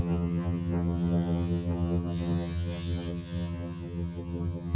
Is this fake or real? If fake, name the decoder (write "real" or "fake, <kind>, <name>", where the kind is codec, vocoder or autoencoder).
fake, vocoder, HiFi-GAN